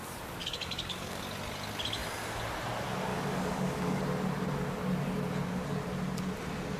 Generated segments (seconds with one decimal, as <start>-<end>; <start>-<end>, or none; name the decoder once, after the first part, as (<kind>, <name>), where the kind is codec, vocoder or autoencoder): 0.4-1.2 (codec, DAC); 3.1-4.0